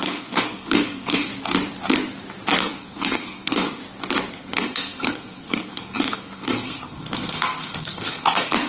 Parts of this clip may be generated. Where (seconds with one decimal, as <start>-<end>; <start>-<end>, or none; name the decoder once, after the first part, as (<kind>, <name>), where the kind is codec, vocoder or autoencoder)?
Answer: 0.0-1.3 (codec, SNAC); 2.6-3.8; 4.3-8.7